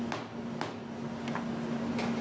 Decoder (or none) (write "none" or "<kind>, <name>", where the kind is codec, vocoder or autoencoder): none